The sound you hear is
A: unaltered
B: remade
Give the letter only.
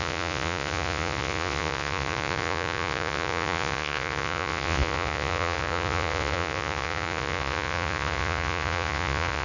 B